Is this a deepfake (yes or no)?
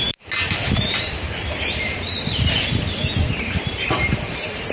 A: yes